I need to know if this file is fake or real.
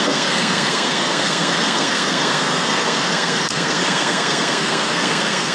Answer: fake